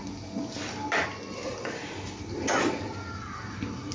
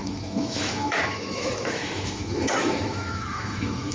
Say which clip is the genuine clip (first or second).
first